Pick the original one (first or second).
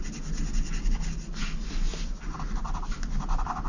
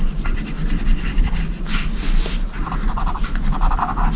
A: first